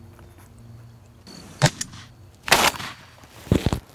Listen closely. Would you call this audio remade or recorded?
recorded